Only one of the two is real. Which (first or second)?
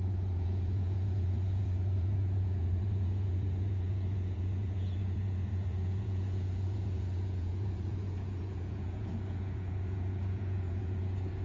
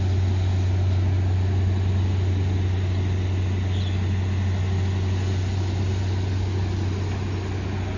second